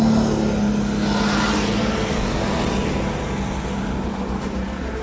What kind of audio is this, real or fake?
real